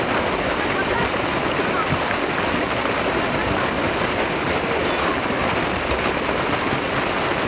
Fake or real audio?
real